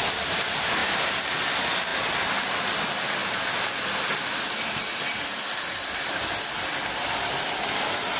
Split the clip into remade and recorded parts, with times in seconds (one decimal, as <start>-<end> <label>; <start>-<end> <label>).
0.0-8.2 recorded